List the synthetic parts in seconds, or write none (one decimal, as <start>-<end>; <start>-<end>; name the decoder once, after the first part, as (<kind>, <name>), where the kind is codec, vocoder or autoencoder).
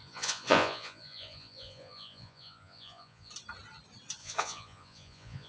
0.0-3.3 (vocoder, Vocos); 4.2-5.5